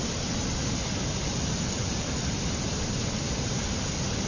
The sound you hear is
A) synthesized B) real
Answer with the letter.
B